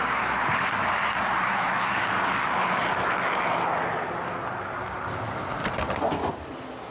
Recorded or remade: recorded